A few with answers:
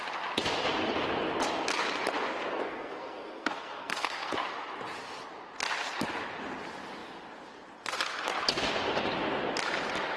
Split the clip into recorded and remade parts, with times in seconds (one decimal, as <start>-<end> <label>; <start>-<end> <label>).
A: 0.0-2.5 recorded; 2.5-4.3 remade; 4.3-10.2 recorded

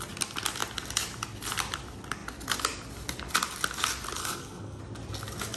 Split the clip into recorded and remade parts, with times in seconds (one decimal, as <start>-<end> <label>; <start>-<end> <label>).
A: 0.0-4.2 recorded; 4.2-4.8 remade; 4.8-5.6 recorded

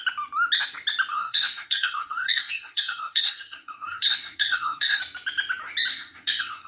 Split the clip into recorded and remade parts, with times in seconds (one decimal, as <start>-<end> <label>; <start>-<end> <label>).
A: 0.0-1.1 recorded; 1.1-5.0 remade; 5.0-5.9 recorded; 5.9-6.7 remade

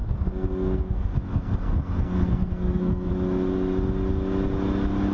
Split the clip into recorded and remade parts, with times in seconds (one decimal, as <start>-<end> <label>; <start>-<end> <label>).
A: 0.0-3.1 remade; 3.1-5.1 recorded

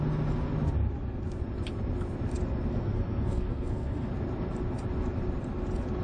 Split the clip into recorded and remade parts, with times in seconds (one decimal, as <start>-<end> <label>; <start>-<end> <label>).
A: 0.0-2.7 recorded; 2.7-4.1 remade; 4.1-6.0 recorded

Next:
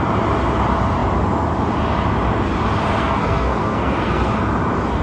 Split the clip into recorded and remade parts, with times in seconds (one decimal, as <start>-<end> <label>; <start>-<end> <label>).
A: 0.0-2.9 recorded; 2.9-4.3 remade; 4.3-5.0 recorded

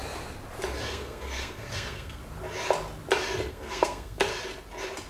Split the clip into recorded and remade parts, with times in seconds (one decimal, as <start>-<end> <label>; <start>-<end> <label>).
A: 0.0-0.9 recorded; 0.9-2.2 remade; 2.2-3.5 recorded; 3.5-4.3 remade; 4.3-5.1 recorded

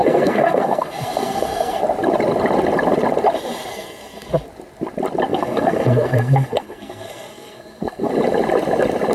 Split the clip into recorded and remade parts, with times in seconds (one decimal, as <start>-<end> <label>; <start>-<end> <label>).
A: 0.0-1.8 remade; 1.8-3.7 recorded; 3.7-4.3 remade; 4.3-5.3 recorded; 5.3-8.1 remade; 8.1-9.1 recorded